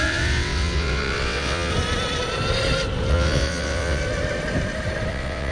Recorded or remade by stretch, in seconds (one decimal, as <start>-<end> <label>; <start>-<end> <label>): 0.0-1.7 remade; 1.7-3.1 recorded; 3.1-4.0 remade; 4.0-5.1 recorded; 5.1-5.5 remade